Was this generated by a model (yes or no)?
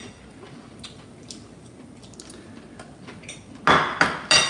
no